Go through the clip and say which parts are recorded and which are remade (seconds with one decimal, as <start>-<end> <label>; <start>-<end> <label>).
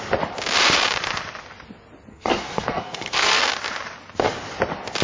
0.0-2.1 recorded; 2.1-3.4 remade; 3.4-5.0 recorded